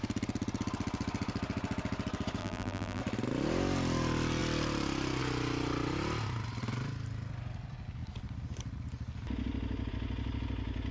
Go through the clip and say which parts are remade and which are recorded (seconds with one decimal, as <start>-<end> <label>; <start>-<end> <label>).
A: 0.0-2.4 recorded; 2.4-3.0 remade; 3.0-10.9 recorded